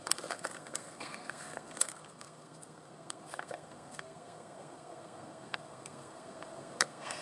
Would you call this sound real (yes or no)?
no